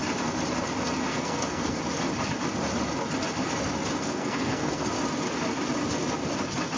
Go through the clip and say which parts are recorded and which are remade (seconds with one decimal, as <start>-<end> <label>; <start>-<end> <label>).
0.0-1.1 recorded; 1.1-1.8 remade; 1.8-4.0 recorded; 4.0-4.9 remade; 4.9-6.8 recorded